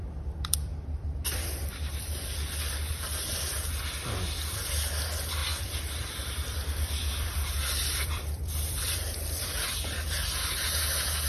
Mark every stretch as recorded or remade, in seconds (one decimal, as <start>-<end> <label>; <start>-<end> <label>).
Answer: 0.0-3.7 remade; 3.7-5.4 recorded; 5.4-9.5 remade; 9.5-11.3 recorded